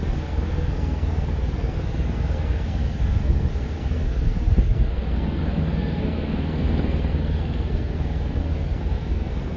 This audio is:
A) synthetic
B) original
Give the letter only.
A